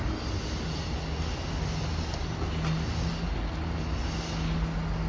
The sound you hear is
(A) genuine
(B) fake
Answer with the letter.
A